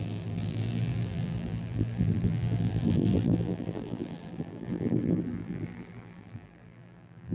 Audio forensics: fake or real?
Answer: fake